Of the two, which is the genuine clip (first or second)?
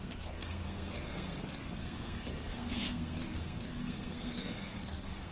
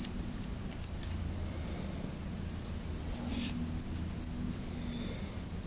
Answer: second